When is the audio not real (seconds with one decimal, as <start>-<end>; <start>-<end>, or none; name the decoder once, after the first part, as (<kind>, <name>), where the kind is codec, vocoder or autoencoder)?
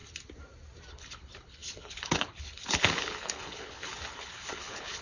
0.9-5.0 (codec, HILCodec)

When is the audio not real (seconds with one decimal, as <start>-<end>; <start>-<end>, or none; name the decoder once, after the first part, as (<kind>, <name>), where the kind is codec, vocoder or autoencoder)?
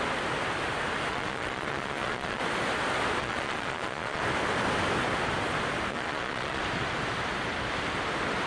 1.1-2.4 (vocoder, Vocos); 3.2-4.2; 5.9-6.6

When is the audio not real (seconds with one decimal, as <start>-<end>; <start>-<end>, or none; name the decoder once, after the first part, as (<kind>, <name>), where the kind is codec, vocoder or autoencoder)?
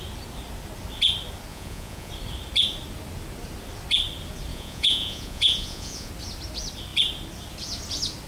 1.5-2.1 (vocoder, Vocos); 4.5-6.1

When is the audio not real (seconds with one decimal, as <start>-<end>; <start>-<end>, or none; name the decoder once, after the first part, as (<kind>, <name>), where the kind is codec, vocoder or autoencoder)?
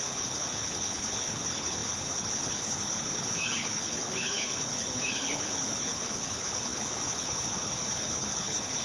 0.0-8.8 (codec, HILCodec)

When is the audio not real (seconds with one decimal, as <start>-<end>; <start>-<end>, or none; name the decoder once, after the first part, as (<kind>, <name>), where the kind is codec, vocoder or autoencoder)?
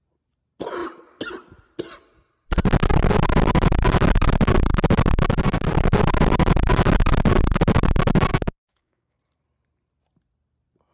8.3-9.2 (codec, DAC)